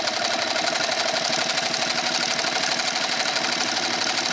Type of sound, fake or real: real